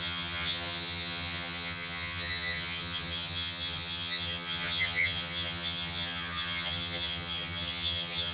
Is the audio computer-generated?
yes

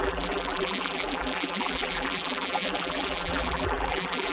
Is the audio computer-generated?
yes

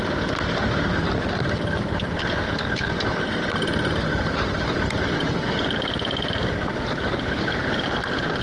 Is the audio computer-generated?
yes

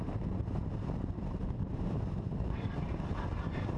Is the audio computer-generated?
yes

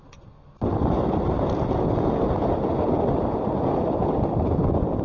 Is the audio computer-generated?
no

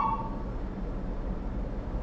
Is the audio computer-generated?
no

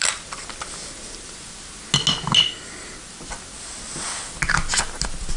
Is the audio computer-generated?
no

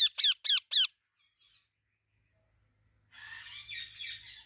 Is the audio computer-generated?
no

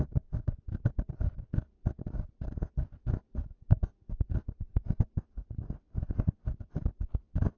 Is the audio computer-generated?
no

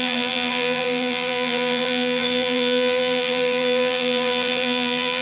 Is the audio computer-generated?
yes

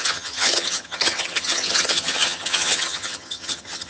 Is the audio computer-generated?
yes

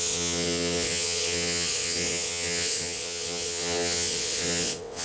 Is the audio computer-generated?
yes